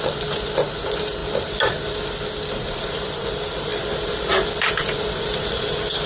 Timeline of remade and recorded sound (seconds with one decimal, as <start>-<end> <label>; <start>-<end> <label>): 0.0-6.1 recorded